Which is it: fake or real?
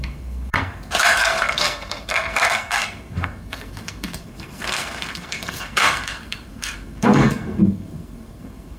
fake